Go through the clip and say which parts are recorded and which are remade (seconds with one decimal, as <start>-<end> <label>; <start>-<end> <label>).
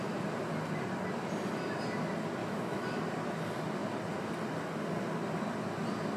0.0-2.4 recorded; 2.4-3.0 remade; 3.0-6.2 recorded